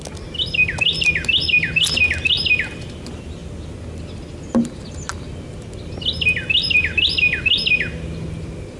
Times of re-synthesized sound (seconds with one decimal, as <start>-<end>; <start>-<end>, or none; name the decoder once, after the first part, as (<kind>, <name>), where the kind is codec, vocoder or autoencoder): none